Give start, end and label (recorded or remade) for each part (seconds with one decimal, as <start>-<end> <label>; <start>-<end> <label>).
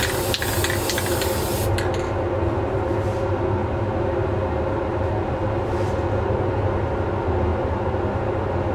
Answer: 0.0-8.7 recorded